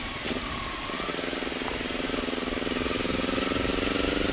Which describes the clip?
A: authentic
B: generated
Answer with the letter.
A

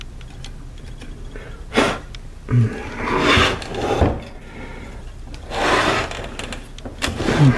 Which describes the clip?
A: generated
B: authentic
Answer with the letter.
B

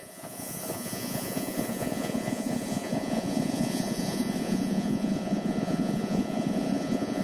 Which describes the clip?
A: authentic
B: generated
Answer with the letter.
B